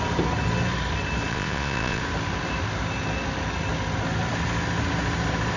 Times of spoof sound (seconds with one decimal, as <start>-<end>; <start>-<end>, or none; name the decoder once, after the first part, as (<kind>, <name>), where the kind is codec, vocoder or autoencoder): 1.3-2.0 (vocoder, Vocos)